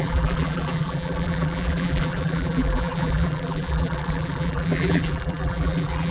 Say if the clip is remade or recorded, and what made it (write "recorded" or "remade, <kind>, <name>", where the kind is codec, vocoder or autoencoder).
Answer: remade, vocoder, BigVGAN v2